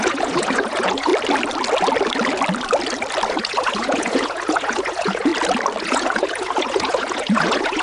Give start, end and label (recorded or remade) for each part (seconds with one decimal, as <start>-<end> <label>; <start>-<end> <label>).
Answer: 0.0-1.1 remade; 1.1-3.3 recorded; 3.3-5.3 remade; 5.3-5.8 recorded; 5.8-7.8 remade